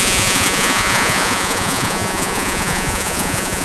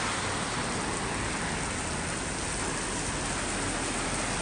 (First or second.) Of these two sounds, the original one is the second